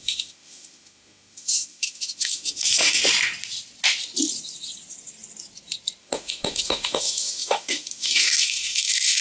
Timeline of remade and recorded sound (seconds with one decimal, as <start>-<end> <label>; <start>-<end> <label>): 0.0-3.0 remade; 3.0-6.0 recorded; 6.0-9.2 remade